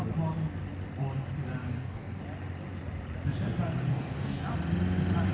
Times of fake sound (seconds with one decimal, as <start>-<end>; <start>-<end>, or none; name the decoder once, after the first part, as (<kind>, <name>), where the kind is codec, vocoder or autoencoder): 1.6-2.2 (codec, DAC); 3.9-4.4